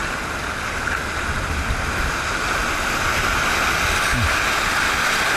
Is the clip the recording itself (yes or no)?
yes